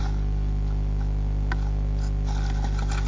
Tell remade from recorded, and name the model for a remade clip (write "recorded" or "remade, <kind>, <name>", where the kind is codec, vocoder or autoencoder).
recorded